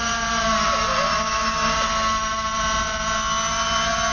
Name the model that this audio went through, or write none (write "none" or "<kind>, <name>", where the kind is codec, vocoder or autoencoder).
none